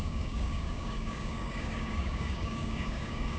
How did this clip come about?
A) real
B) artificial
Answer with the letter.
B